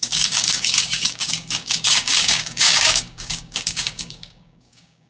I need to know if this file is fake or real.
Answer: fake